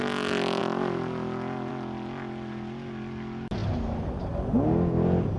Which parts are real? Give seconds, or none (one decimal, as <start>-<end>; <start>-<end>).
0.0-5.4